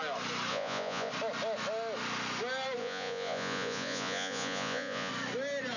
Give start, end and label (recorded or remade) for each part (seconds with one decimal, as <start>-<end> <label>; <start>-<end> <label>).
0.0-0.5 recorded; 0.5-1.1 remade; 1.1-2.8 recorded; 2.8-5.1 remade; 5.1-5.8 recorded